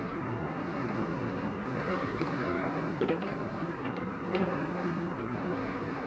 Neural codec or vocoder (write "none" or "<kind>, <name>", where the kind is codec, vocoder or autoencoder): codec, SNAC